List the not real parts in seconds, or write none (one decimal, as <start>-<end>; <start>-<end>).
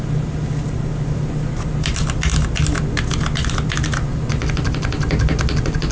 none